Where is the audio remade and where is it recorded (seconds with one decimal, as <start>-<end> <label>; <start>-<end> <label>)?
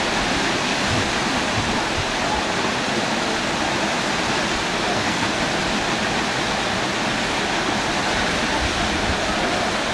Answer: 0.0-4.9 recorded; 4.9-5.4 remade; 5.4-9.9 recorded